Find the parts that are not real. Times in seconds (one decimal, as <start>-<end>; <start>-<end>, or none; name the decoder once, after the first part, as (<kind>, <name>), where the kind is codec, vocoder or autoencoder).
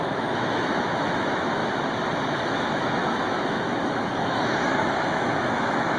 0.0-1.6 (autoencoder, DAC-VAE); 2.4-6.0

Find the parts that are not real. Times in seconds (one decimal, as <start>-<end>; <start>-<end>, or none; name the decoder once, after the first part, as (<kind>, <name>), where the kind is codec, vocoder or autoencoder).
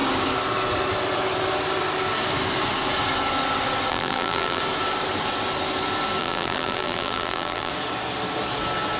3.9-4.6 (vocoder, BigVGAN v2); 6.2-7.7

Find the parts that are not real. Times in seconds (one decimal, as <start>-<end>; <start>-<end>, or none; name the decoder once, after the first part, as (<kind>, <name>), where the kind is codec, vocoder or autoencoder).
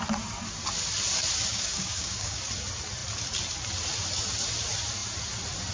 1.5-2.4 (codec, DAC)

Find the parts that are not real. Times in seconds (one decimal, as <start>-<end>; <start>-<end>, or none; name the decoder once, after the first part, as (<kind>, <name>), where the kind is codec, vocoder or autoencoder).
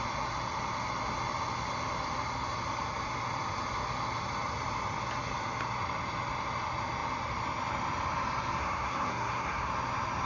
8.6-9.7 (codec, SNAC)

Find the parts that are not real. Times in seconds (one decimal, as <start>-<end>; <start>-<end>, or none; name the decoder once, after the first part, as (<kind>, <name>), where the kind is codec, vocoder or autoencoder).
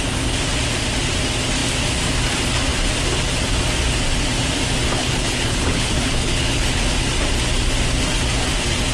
5.0-6.8 (codec, HILCodec)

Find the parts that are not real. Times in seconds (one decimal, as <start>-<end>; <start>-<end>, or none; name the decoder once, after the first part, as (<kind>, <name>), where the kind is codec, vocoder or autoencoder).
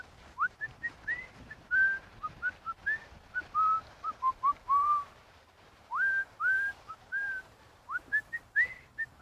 0.0-2.8 (vocoder, BigVGAN v2); 4.2-9.2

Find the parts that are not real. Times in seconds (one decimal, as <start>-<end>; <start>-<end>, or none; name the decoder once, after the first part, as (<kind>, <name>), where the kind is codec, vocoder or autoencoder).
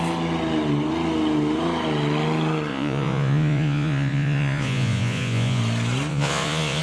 2.7-5.6 (vocoder, Vocos); 6.1-6.8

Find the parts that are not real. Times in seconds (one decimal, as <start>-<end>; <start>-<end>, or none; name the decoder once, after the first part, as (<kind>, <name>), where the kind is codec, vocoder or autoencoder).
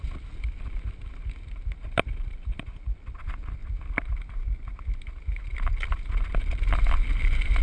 none